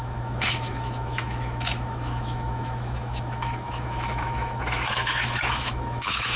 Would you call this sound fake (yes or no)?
yes